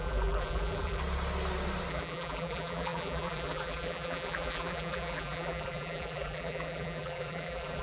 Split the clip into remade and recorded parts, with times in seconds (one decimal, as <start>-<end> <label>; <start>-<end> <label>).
0.0-1.0 remade; 1.0-1.9 recorded; 1.9-7.8 remade